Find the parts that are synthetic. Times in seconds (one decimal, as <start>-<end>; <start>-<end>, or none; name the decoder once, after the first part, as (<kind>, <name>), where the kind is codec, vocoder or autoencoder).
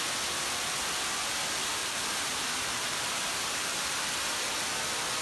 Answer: 1.8-4.0 (vocoder, BigVGAN v2)